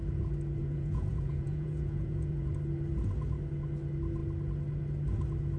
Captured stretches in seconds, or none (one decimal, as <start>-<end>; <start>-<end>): 0.0-0.6; 2.5-5.6

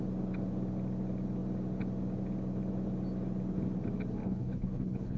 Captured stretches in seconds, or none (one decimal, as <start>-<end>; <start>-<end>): 0.0-4.2

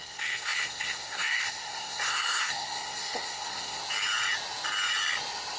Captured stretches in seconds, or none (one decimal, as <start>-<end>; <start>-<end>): 3.8-5.6

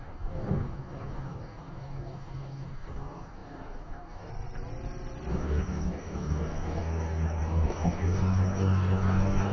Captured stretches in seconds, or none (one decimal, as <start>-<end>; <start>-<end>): 4.3-5.3

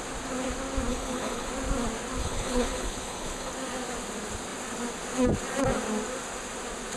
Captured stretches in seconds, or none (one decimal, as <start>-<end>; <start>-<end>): 0.0-0.9; 1.5-2.2; 3.5-7.0